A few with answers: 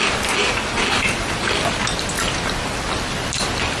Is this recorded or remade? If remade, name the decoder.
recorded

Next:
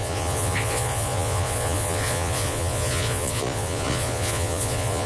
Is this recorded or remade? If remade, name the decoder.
remade, vocoder, Vocos